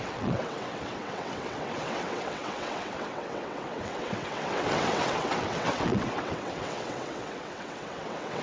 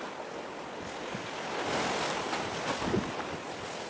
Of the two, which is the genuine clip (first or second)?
second